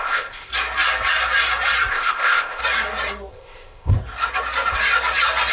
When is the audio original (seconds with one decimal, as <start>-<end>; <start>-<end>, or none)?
0.5-1.9; 2.6-3.3; 3.9-5.5